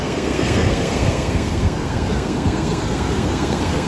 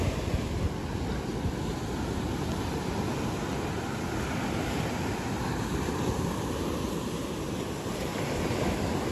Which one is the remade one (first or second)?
first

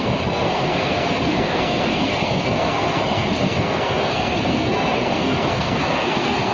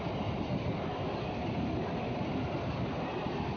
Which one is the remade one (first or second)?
first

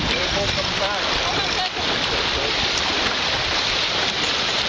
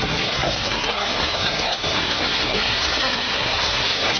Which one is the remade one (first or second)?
second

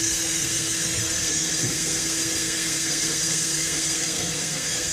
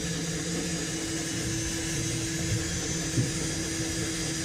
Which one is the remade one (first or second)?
first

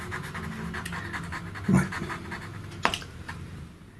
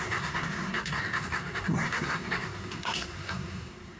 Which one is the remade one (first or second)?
second